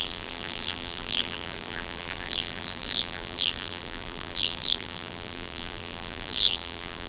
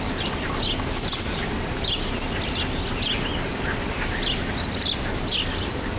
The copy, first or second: first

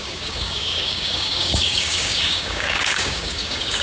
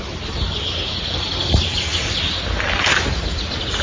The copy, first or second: first